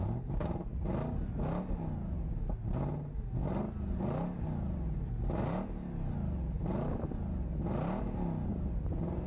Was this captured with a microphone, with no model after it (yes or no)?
yes